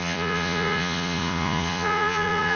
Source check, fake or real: fake